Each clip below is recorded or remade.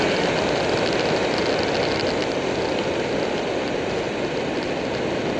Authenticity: recorded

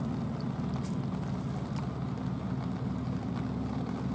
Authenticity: recorded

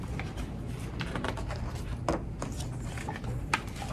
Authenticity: recorded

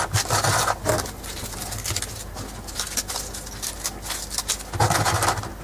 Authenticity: recorded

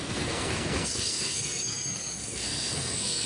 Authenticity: remade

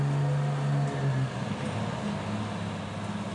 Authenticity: recorded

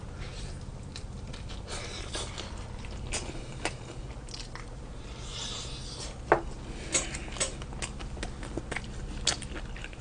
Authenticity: recorded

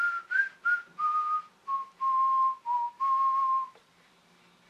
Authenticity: recorded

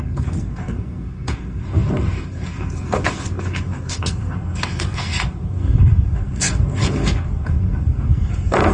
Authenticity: remade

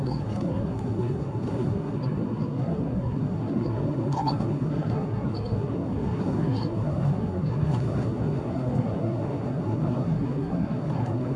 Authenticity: remade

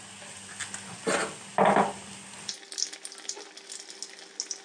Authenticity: recorded